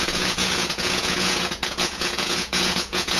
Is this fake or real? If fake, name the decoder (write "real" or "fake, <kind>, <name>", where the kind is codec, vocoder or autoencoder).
fake, vocoder, Vocos